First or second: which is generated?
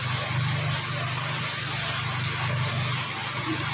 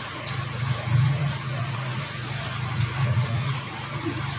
second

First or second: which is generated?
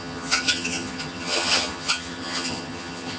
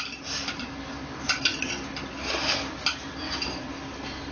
first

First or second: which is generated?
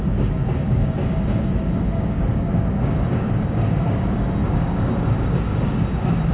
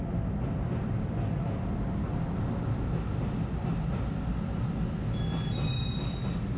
first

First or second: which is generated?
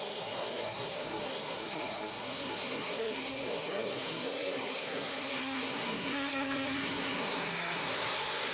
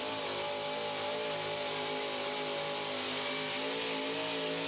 first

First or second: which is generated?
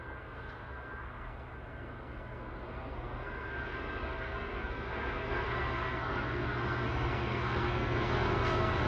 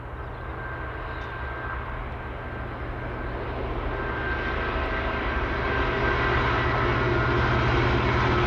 first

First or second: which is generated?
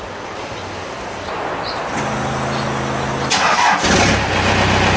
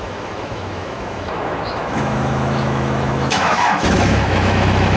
second